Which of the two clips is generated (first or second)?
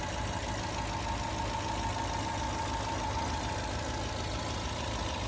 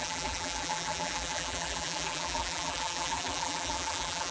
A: second